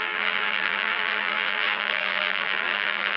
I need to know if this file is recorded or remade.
remade